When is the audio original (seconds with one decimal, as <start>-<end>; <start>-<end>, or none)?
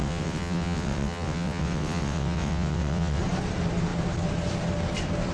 3.2-5.3